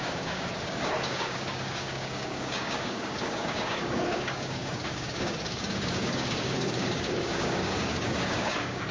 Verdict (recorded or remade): remade